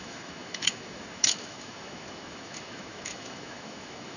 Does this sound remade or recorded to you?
remade